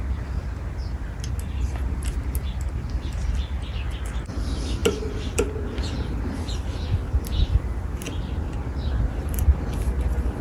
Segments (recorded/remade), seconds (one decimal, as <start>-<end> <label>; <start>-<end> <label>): 0.0-10.4 recorded